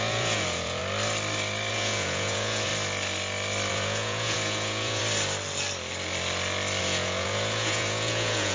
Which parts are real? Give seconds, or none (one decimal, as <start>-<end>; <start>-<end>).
0.8-1.7; 2.7-3.7; 5.0-6.8

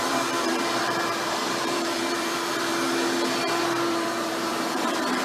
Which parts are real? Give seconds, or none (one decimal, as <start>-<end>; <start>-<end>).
2.7-3.9

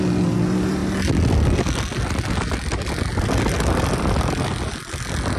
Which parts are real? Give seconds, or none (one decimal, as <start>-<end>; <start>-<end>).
0.0-5.4

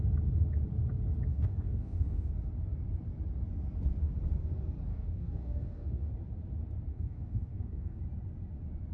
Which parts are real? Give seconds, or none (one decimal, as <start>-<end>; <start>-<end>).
0.0-1.3; 2.3-4.9; 6.1-6.9; 8.0-8.9